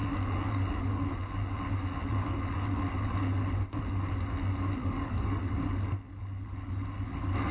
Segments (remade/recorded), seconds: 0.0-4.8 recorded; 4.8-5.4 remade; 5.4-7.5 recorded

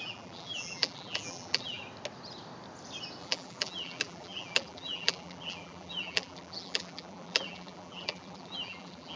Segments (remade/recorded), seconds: 0.0-1.8 remade; 1.8-3.2 recorded; 3.2-9.2 remade

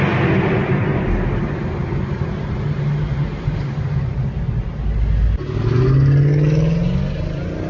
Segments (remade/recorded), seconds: 0.0-7.7 recorded

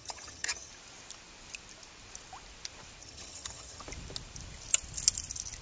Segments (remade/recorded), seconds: 0.0-0.7 remade; 0.7-3.0 recorded; 3.0-3.8 remade; 3.8-5.6 recorded